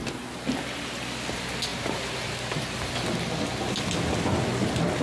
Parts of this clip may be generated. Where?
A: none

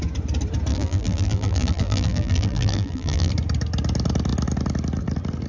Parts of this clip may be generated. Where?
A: 0.7-3.3 (vocoder, BigVGAN v2)

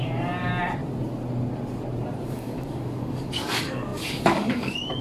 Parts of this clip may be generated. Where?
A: 0.0-0.5 (codec, DAC); 2.3-5.0

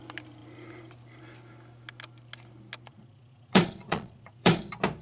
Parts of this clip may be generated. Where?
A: 2.9-4.6 (vocoder, Vocos)

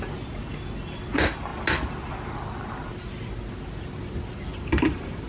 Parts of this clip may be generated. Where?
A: 4.5-5.3 (vocoder, BigVGAN v2)

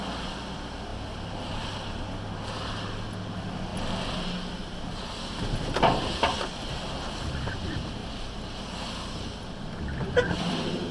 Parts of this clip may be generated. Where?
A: none